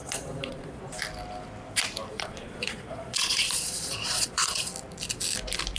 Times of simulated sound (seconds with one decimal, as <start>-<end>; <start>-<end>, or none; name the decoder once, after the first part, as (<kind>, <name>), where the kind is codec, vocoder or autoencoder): 0.0-0.8 (vocoder, Vocos); 2.1-4.7